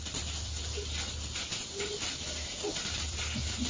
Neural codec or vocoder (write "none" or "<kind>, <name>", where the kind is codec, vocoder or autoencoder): vocoder, BigVGAN v2